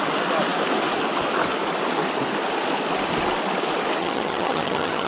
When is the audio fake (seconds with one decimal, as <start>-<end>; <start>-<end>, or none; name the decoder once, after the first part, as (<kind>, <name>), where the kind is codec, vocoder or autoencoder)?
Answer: 4.0-5.1 (vocoder, HiFi-GAN)